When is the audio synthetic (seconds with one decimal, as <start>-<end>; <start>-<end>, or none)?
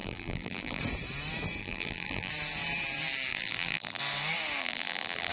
0.0-0.8; 1.6-2.3; 3.3-4.0; 4.6-5.3